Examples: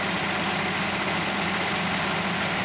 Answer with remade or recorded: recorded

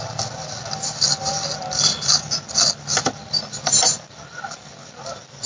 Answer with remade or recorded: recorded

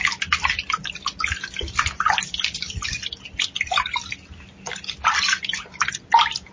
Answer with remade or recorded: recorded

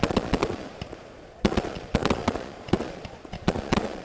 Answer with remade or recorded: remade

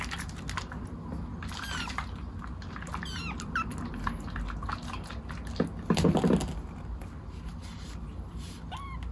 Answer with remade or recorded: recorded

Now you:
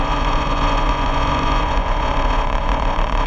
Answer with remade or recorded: remade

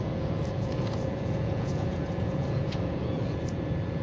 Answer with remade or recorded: remade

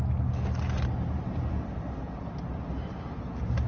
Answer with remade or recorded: recorded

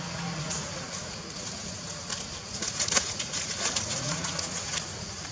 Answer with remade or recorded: remade